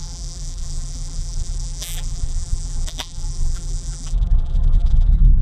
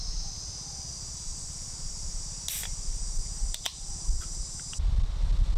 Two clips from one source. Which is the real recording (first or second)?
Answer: second